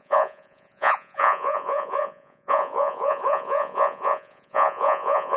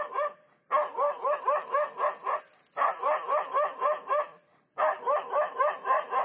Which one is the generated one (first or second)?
first